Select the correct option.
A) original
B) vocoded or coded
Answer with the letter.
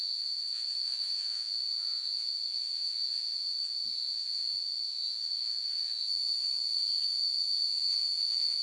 B